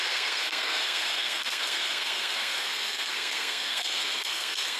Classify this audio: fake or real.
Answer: fake